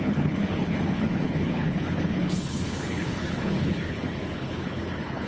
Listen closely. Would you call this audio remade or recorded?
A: remade